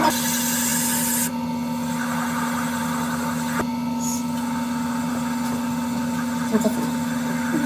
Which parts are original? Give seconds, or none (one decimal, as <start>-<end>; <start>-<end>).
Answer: 0.0-7.7